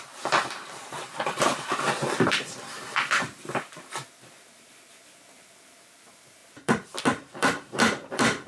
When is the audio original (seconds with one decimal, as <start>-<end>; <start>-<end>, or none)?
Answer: none